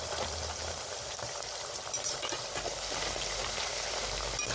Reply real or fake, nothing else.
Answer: real